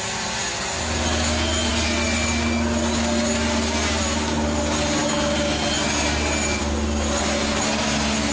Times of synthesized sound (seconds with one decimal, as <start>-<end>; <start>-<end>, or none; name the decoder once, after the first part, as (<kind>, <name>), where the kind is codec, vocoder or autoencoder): none